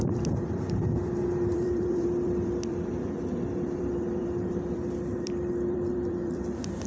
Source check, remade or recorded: remade